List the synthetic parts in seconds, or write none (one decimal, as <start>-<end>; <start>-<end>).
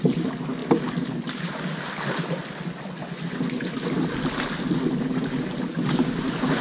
none